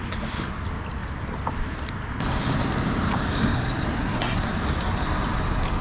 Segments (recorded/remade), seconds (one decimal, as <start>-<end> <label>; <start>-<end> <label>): 0.0-4.0 recorded; 4.0-4.5 remade; 4.5-5.8 recorded